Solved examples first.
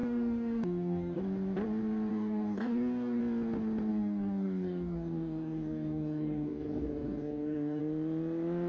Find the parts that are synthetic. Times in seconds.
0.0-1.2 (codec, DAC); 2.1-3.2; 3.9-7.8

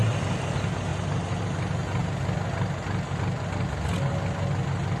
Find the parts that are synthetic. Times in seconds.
none